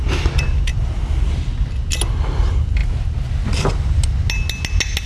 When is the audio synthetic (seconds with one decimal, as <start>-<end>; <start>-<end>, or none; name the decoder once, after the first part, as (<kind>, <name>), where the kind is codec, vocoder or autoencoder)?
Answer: none